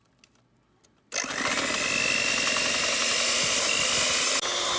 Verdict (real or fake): real